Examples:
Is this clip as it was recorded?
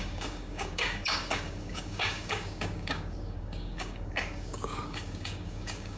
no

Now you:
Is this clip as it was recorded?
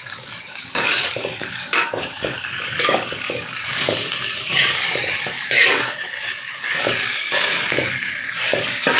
no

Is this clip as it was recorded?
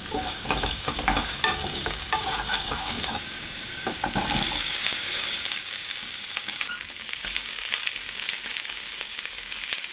no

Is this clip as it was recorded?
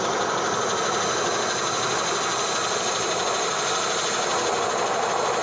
yes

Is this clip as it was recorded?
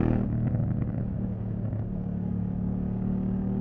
no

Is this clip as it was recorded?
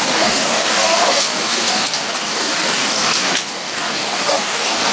no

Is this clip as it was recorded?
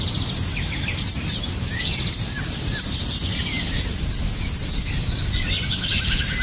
yes